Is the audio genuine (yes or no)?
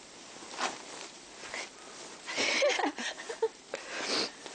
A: yes